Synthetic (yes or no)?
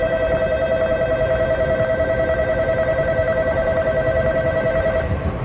yes